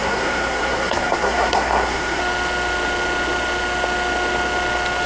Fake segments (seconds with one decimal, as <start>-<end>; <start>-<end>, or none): 0.0-2.2